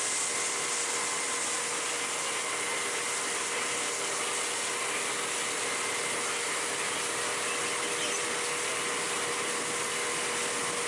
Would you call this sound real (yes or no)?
yes